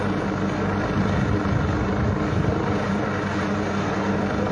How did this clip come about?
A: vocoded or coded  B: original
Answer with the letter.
B